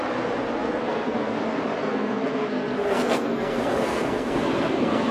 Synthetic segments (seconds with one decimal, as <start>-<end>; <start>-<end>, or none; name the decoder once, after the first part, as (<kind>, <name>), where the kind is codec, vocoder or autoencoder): 0.6-1.4 (codec, SNAC); 1.8-5.1